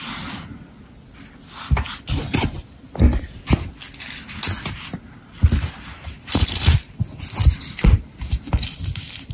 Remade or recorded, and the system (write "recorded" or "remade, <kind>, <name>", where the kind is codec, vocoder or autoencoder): recorded